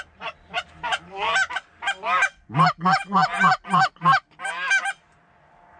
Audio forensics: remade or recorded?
recorded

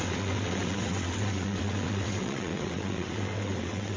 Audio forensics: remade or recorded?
remade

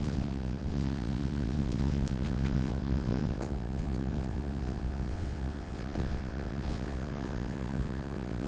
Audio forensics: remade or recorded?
remade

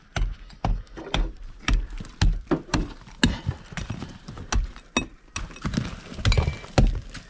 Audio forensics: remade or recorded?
recorded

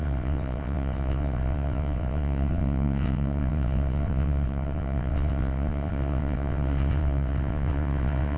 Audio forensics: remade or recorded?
remade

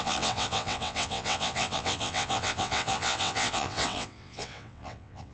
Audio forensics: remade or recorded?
remade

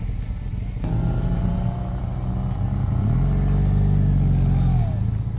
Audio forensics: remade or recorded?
recorded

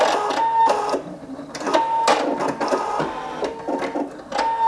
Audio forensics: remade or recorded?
recorded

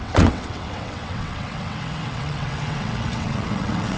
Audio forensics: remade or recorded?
remade